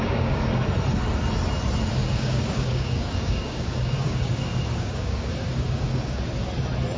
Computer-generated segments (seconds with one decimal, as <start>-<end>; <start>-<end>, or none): 0.0-0.6; 2.0-6.2